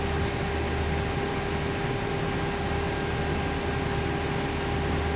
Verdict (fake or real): real